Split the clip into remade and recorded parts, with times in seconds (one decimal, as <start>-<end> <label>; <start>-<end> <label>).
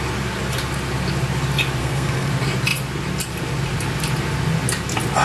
0.0-1.8 recorded; 1.8-2.3 remade; 2.3-5.2 recorded